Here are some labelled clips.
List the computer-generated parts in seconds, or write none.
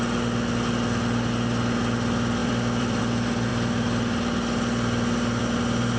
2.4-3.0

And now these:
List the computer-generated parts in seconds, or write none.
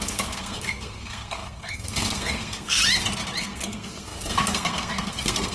0.0-2.8; 3.4-5.5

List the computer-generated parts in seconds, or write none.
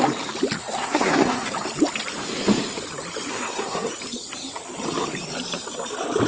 0.6-1.5; 3.3-3.9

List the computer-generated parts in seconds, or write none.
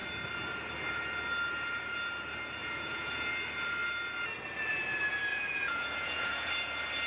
2.6-3.3; 5.3-6.5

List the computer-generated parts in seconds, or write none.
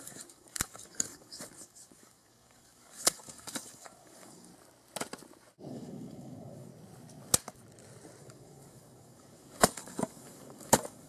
0.0-4.5; 5.7-6.7; 8.2-11.1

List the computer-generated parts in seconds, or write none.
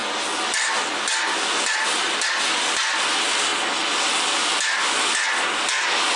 none